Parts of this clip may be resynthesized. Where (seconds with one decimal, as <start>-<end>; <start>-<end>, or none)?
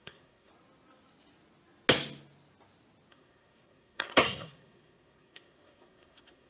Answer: 0.0-0.5; 3.1-6.5